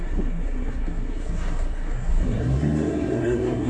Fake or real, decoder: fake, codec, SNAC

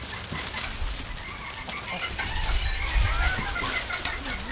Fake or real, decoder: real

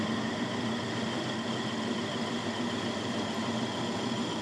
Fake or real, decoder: real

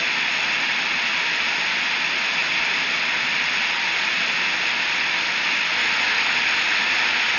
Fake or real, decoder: real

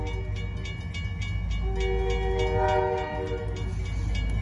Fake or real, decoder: real